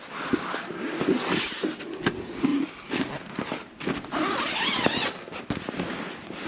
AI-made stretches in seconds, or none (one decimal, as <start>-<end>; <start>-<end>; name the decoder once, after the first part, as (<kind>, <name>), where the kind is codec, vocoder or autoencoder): none